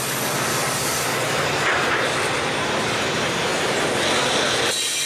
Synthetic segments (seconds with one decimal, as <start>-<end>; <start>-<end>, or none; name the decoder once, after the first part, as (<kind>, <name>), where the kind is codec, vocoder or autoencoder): none